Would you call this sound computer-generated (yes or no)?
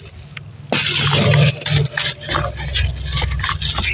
no